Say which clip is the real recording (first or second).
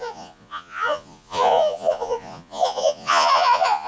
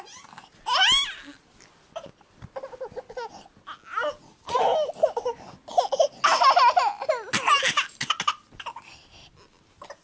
second